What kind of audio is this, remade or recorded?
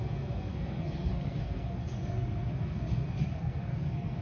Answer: remade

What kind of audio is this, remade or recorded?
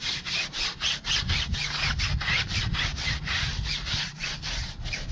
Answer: recorded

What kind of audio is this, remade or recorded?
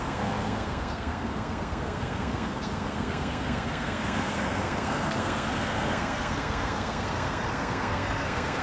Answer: remade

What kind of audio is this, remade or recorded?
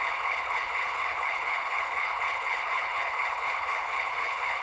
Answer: remade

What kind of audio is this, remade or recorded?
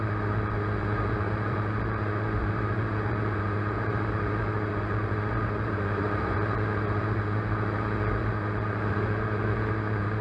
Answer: remade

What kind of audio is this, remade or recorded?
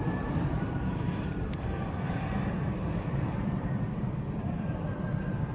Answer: remade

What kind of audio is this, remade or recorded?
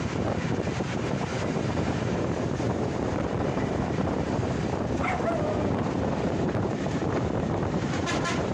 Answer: remade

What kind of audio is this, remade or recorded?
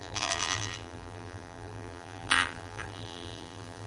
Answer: remade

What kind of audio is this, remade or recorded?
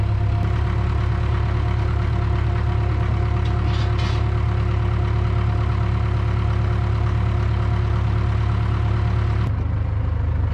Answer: recorded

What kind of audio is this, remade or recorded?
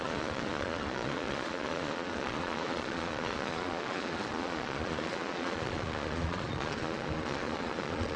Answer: remade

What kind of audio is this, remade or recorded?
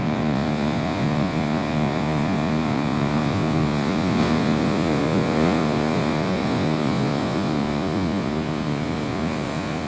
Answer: remade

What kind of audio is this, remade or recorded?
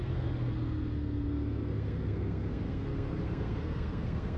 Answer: remade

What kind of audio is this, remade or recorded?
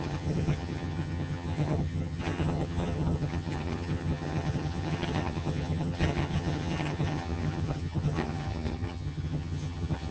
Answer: remade